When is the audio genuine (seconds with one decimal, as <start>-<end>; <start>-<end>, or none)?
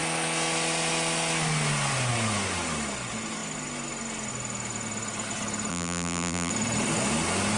0.0-5.7; 6.5-7.6